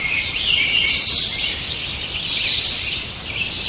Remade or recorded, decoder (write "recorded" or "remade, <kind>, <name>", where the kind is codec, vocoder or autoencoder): remade, vocoder, BigVGAN v2